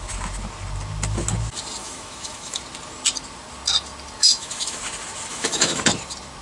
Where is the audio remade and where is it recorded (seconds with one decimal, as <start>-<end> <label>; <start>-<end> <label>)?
0.0-1.8 recorded; 1.8-2.6 remade; 2.6-4.2 recorded; 4.2-4.8 remade; 4.8-5.3 recorded; 5.3-5.8 remade; 5.8-6.4 recorded